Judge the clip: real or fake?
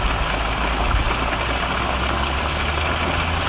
real